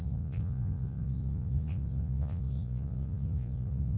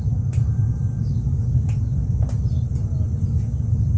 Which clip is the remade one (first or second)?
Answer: first